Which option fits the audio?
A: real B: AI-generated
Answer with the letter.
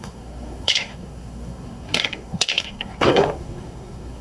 B